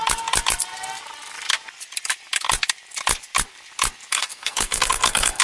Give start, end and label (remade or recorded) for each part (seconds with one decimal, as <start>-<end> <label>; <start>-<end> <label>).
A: 0.0-4.1 recorded; 4.1-5.4 remade